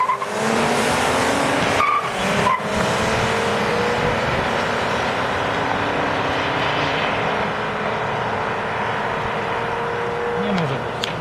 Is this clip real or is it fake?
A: real